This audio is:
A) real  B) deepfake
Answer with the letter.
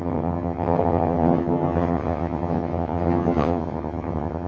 B